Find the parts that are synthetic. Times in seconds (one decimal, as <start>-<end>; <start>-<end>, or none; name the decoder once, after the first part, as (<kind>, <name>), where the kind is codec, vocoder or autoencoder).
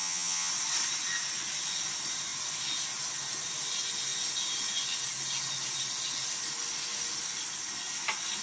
0.0-0.5 (vocoder, HiFi-GAN)